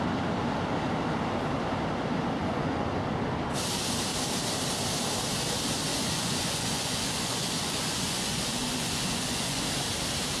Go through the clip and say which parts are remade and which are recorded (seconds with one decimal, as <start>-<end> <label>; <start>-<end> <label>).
0.0-2.4 recorded; 2.4-2.9 remade; 2.9-5.9 recorded; 5.9-9.6 remade; 9.6-10.4 recorded